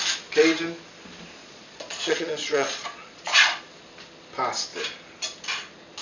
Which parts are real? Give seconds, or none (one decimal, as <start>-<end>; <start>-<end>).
0.0-1.4; 3.6-6.0